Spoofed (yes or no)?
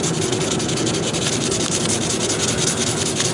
no